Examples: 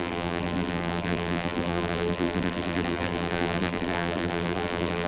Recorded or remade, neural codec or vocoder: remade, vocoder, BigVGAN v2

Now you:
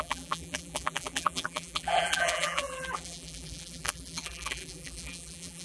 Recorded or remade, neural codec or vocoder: remade, vocoder, BigVGAN v2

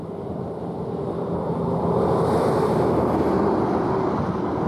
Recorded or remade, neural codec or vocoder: recorded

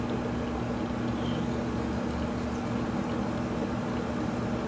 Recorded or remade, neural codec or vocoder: recorded